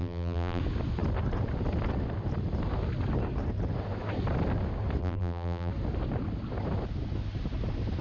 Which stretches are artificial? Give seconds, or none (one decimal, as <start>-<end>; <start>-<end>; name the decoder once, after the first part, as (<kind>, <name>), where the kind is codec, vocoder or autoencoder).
0.0-0.6 (vocoder, BigVGAN v2); 5.0-5.7